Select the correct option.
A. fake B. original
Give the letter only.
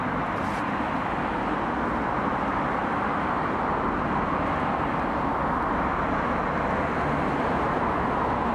B